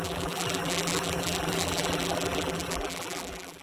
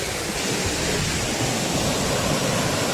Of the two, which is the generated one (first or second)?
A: first